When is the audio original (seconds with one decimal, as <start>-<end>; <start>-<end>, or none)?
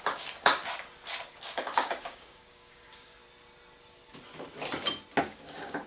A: 0.6-1.3; 3.2-5.2